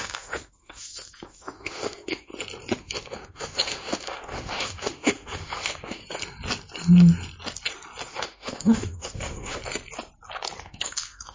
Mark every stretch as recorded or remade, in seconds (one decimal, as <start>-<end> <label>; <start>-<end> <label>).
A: 0.0-2.3 remade; 2.3-2.8 recorded; 2.8-6.0 remade; 6.0-8.1 recorded; 8.1-9.6 remade; 9.6-10.6 recorded; 10.6-11.3 remade

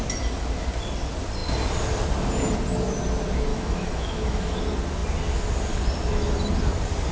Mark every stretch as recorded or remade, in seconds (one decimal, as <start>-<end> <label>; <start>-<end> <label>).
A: 0.0-3.5 recorded; 3.5-4.6 remade; 4.6-7.1 recorded

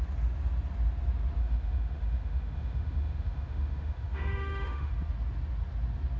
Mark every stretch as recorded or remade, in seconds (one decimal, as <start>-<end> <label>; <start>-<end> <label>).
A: 0.0-1.4 recorded; 1.4-4.9 remade; 4.9-6.2 recorded

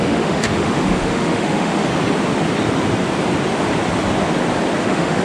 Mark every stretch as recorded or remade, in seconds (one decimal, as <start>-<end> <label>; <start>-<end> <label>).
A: 0.0-1.9 remade; 1.9-4.8 recorded; 4.8-5.2 remade

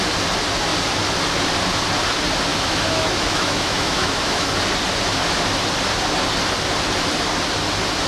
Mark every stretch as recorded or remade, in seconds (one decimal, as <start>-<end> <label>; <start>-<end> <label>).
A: 0.0-2.5 recorded; 2.5-4.5 remade; 4.5-8.1 recorded